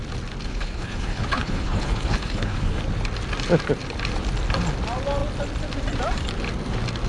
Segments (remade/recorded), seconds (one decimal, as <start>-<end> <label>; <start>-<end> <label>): 0.0-0.5 recorded; 0.5-2.8 remade; 2.8-7.1 recorded